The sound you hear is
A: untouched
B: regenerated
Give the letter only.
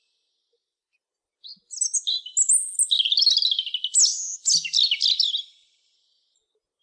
A